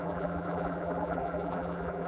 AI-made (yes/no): yes